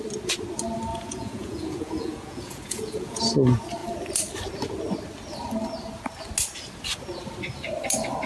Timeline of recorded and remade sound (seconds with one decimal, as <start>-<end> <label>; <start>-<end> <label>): 0.0-0.9 recorded; 0.9-3.2 remade; 3.2-8.3 recorded